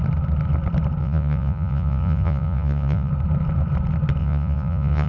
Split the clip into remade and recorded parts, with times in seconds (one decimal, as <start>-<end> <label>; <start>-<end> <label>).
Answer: 0.0-1.0 recorded; 1.0-3.1 remade; 3.1-4.2 recorded; 4.2-5.1 remade